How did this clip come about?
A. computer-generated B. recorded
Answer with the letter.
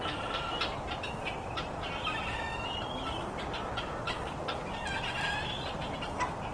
B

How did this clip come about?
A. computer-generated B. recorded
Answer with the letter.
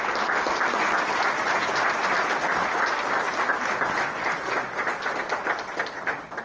B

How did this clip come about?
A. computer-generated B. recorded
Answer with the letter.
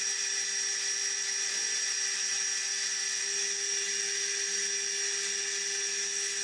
B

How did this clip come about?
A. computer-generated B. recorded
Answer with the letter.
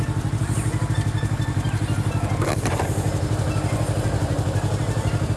B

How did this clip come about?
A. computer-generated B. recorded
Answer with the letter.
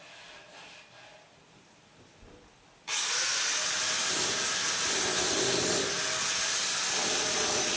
B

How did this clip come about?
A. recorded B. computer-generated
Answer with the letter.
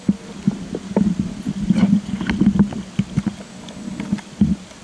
A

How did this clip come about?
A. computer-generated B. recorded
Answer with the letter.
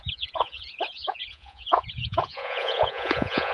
A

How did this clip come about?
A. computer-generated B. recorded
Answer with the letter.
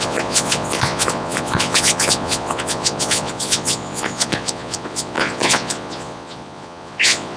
A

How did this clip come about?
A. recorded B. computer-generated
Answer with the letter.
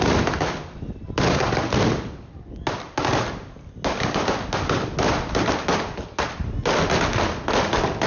A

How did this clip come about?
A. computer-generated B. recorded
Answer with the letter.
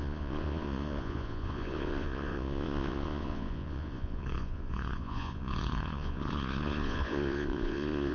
A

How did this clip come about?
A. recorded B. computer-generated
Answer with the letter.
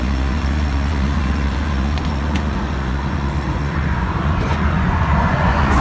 B